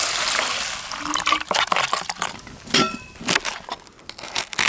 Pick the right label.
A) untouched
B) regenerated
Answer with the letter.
A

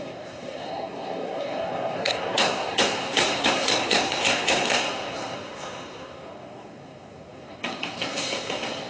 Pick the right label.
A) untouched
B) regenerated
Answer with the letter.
B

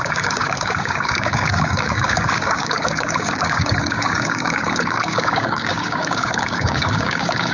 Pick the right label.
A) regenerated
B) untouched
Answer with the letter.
A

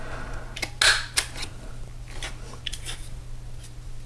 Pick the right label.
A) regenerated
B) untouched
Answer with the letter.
B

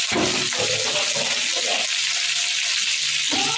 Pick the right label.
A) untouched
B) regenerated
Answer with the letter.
A